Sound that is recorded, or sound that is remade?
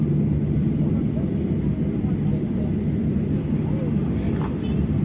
recorded